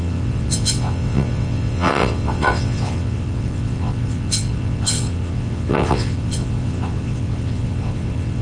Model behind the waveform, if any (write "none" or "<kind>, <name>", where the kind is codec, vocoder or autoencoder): vocoder, WaveNeXt